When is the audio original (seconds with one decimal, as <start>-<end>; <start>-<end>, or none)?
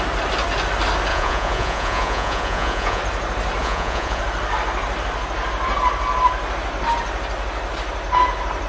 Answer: 0.0-1.1; 3.0-3.6; 4.2-8.7